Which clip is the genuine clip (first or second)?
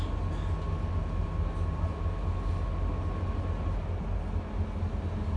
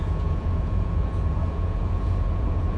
first